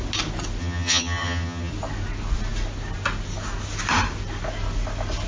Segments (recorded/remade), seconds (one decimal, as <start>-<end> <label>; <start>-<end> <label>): 0.0-0.6 recorded; 0.6-1.7 remade; 1.7-5.3 recorded